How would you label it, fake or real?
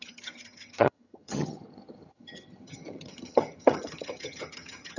fake